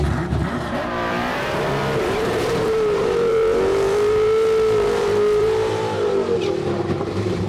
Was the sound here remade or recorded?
remade